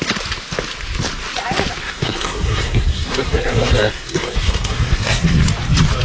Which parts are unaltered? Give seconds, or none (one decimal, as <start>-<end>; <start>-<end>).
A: 0.0-1.8; 5.4-6.0